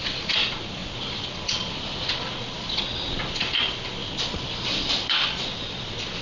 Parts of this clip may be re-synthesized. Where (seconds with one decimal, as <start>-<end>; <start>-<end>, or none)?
0.0-6.2